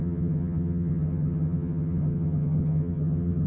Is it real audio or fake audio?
fake